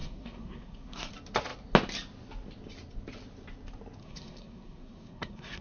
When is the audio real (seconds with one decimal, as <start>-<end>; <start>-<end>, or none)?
1.1-4.0